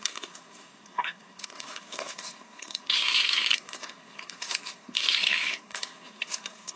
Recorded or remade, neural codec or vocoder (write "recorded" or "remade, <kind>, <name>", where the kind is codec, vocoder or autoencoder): remade, codec, SNAC